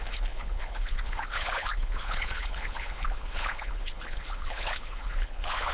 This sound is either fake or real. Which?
fake